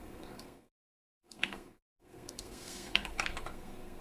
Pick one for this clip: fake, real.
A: fake